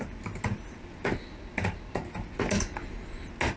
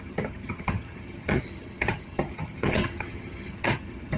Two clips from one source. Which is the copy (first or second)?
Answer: second